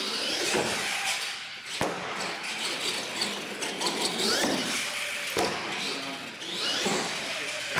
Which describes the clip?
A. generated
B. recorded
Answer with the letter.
B